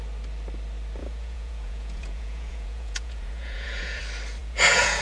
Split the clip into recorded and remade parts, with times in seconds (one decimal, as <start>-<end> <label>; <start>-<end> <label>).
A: 0.0-1.0 recorded; 1.0-4.0 remade; 4.0-4.4 recorded; 4.4-5.0 remade